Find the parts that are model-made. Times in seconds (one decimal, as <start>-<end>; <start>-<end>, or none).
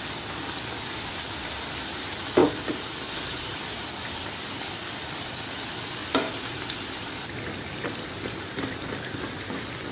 2.4-3.1